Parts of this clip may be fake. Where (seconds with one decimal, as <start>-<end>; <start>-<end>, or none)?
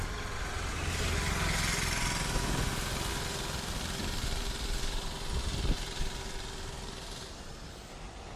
none